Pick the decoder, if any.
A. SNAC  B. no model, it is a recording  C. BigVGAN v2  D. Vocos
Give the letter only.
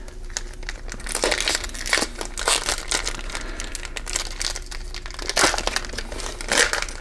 B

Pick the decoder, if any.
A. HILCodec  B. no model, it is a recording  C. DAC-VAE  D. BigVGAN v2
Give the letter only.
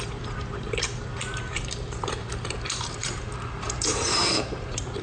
D